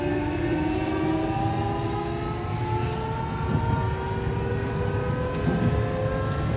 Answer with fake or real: real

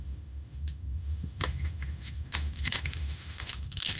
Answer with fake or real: fake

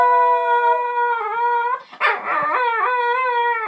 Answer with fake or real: real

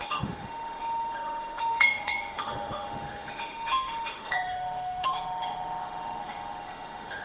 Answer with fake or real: fake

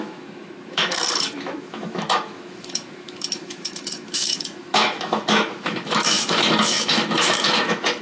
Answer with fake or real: fake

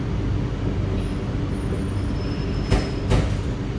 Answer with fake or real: real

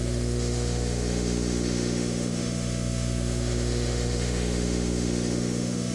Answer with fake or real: fake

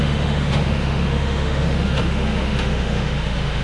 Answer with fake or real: fake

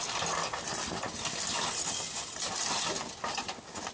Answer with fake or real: real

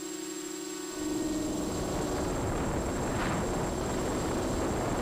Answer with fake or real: real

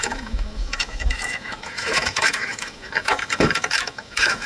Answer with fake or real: fake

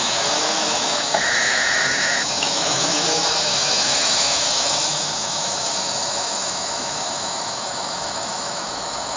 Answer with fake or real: fake